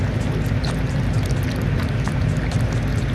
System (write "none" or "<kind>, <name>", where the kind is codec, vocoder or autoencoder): none